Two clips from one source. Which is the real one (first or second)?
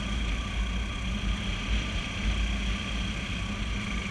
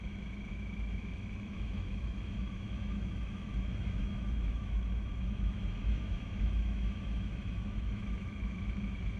first